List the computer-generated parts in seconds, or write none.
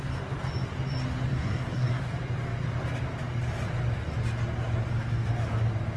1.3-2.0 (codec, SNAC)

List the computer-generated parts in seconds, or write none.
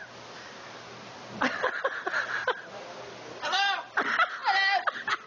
none